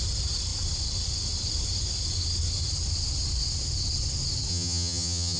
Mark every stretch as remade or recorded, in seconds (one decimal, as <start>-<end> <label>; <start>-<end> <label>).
0.0-4.5 recorded; 4.5-5.4 remade